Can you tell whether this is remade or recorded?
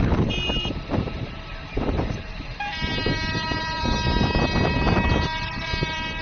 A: remade